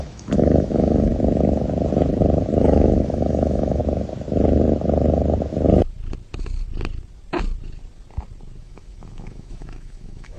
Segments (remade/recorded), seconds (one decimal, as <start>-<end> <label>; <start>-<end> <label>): 0.0-1.1 remade; 1.1-2.6 recorded; 2.6-3.8 remade; 3.8-8.6 recorded; 8.6-10.4 remade